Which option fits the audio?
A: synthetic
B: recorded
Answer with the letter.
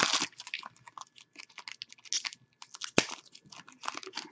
B